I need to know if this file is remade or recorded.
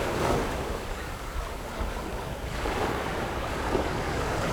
remade